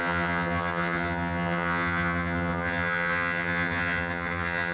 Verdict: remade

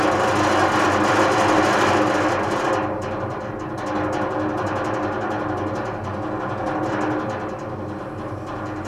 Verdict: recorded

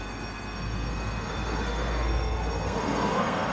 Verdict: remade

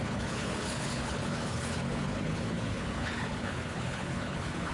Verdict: remade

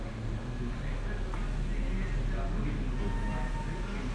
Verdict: recorded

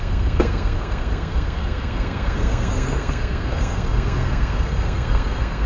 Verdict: remade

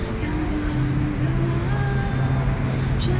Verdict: recorded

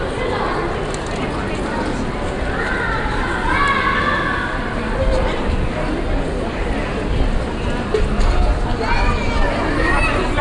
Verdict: recorded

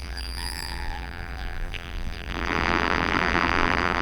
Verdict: remade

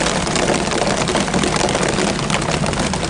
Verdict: recorded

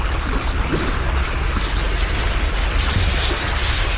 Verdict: recorded